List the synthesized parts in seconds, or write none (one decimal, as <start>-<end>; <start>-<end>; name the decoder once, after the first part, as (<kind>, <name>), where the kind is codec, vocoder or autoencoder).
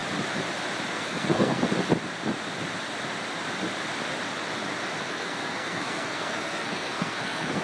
0.9-1.7 (codec, SNAC); 5.0-7.6